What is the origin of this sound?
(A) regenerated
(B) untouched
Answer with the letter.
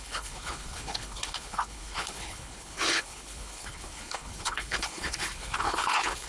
A